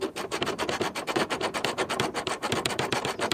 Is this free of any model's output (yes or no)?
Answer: yes